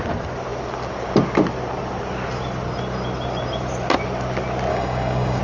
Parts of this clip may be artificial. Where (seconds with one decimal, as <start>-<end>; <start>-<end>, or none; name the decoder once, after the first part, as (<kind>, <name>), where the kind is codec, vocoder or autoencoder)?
4.7-5.4 (codec, DAC)